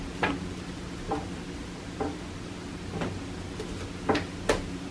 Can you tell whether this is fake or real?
real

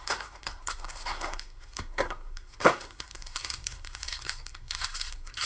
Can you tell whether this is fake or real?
fake